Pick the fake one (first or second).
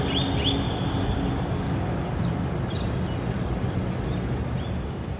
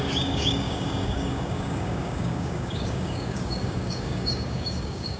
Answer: second